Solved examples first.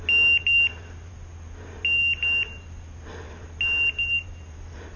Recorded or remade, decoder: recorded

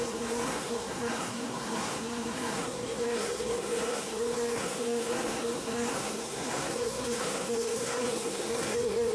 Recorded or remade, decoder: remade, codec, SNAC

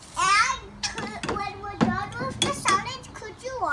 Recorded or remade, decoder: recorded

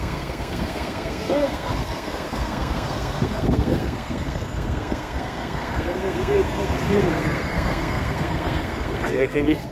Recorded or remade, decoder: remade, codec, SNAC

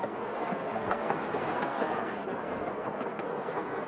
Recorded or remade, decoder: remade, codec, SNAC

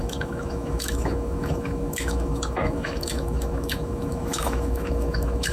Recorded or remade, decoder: remade, autoencoder, DAC-VAE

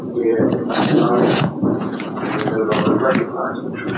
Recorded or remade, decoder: remade, vocoder, Vocos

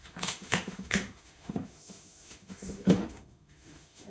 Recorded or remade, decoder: remade, autoencoder, DAC-VAE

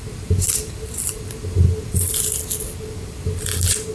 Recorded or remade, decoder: recorded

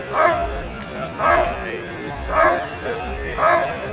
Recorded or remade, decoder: recorded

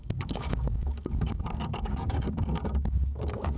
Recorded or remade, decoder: remade, codec, DAC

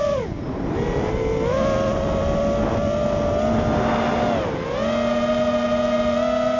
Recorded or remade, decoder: recorded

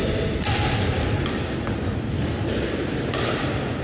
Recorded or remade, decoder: recorded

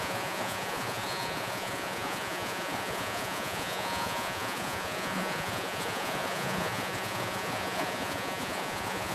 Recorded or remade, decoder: remade, vocoder, Vocos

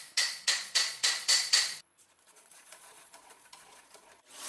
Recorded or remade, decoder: remade, vocoder, Vocos